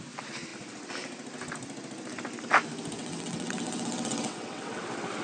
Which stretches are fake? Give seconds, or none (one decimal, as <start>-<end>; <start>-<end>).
3.0-4.8